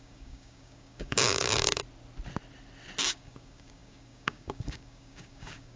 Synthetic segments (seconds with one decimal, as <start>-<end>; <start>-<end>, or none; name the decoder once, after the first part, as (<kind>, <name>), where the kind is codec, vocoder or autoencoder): 0.0-1.8 (codec, DAC); 3.0-5.8